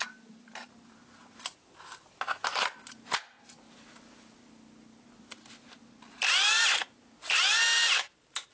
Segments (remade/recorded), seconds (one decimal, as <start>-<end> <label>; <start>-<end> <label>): 0.0-8.5 recorded